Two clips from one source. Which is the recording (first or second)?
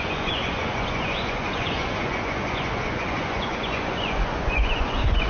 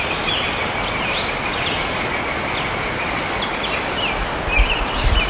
second